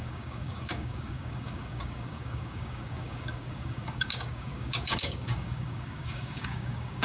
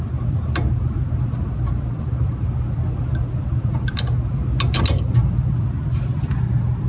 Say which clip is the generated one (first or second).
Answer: first